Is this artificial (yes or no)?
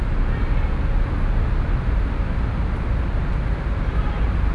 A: no